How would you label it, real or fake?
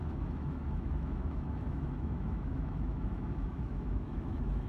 fake